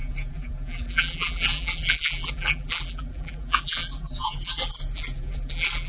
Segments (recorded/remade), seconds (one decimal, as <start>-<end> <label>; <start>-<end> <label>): 0.0-5.9 remade